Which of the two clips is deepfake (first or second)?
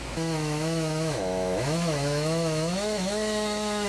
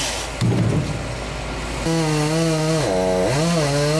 first